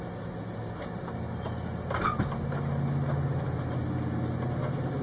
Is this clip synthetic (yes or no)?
no